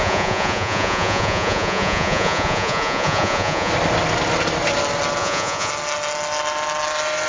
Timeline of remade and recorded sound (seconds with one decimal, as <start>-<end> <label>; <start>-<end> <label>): 0.0-3.7 remade; 3.7-5.2 recorded; 5.2-5.7 remade; 5.7-7.3 recorded